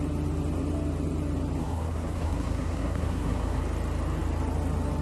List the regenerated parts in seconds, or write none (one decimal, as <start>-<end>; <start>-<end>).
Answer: 1.6-3.6